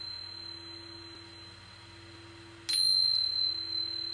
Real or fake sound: real